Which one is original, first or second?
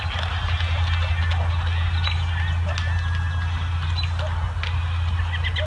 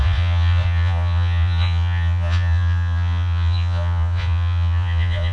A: first